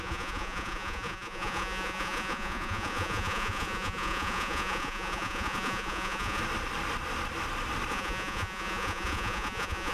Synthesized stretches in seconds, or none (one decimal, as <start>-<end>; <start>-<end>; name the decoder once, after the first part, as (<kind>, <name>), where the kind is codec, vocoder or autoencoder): 0.0-6.4 (vocoder, Vocos); 7.9-9.9